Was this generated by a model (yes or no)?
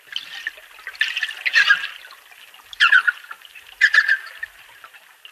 no